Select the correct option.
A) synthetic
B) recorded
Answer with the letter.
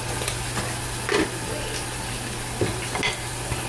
B